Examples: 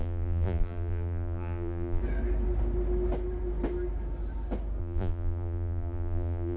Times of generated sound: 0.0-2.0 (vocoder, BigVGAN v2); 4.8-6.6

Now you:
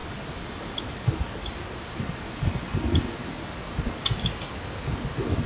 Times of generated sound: 0.0-2.0 (vocoder, BigVGAN v2)

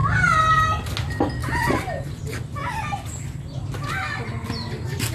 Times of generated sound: 1.4-2.2 (vocoder, BigVGAN v2); 2.6-3.4

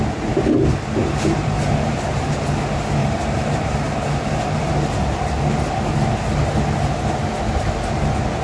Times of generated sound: 1.0-1.9 (vocoder, BigVGAN v2); 3.0-4.7

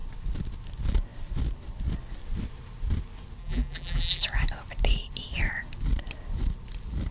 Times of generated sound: 3.4-4.2 (vocoder, BigVGAN v2)

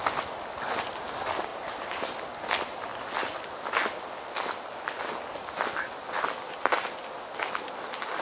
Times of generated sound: 1.5-2.2 (vocoder, BigVGAN v2)

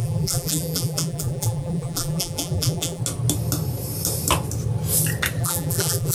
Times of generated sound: 0.0-3.0 (vocoder, BigVGAN v2); 5.4-6.1

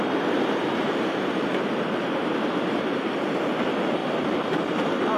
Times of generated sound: 0.0-4.0 (vocoder, BigVGAN v2)